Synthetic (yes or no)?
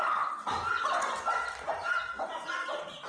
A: no